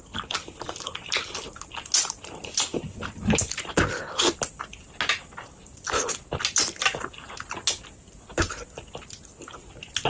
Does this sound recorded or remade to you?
recorded